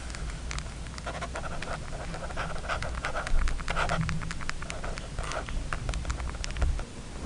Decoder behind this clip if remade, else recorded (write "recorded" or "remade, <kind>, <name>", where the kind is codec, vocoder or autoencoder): recorded